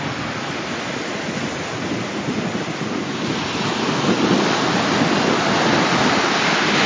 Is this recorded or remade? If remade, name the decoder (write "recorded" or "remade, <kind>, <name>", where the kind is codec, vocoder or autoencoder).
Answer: recorded